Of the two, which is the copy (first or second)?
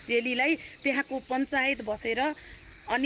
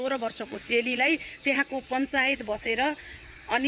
second